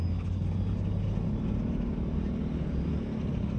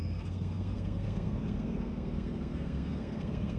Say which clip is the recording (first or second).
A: first